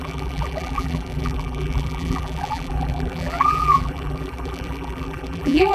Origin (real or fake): fake